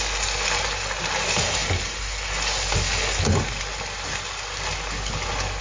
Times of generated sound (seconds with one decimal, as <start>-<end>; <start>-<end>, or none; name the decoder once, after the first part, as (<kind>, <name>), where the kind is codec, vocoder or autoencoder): none

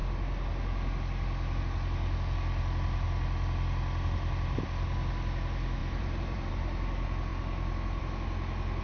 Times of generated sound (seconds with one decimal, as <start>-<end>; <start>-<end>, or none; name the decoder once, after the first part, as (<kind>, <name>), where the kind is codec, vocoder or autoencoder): 5.8-6.5 (vocoder, BigVGAN v2); 7.3-8.0

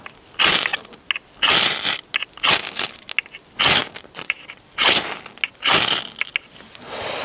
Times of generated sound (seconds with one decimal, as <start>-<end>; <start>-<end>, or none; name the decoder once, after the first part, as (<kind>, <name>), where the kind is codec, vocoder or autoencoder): 3.8-4.4 (vocoder, BigVGAN v2)

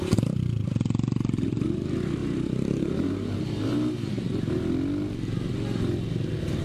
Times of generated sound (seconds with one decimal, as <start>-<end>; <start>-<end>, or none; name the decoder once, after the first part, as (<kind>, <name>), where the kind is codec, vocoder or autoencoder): 2.2-4.1 (vocoder, BigVGAN v2)

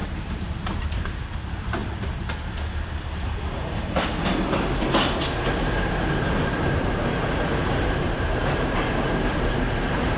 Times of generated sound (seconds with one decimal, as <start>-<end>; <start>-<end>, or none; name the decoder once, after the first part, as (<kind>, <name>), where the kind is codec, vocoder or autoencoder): 0.0-1.8 (vocoder, BigVGAN v2); 6.7-10.2

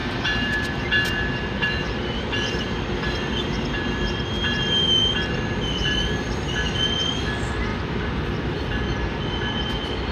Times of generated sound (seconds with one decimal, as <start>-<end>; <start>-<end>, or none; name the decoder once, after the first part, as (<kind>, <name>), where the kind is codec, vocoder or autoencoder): 0.0-0.6 (vocoder, BigVGAN v2)